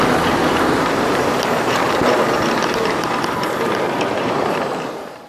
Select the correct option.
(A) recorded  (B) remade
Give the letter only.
B